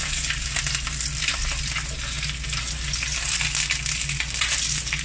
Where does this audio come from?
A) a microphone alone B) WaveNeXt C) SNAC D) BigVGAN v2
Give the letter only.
A